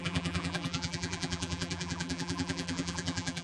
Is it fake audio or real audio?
fake